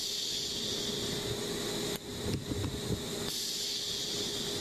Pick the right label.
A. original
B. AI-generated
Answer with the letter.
A